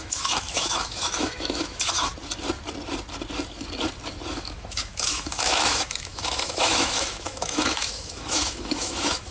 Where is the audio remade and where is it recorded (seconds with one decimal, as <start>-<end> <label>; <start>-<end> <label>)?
0.0-2.1 remade; 2.1-4.3 recorded; 4.3-9.3 remade